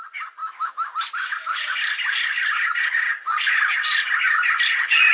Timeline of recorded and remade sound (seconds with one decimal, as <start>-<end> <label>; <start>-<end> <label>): 0.0-0.4 recorded; 0.4-0.9 remade; 0.9-5.1 recorded